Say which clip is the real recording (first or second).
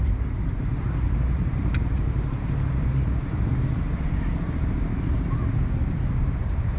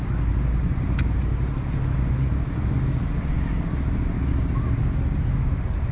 second